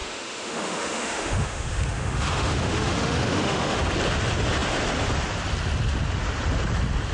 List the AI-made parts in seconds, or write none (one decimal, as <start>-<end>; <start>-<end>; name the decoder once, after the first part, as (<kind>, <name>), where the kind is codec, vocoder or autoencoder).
0.0-3.8 (autoencoder, DAC-VAE)